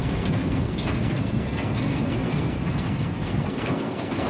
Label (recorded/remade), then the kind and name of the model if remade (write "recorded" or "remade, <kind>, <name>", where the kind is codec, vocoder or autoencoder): remade, codec, SNAC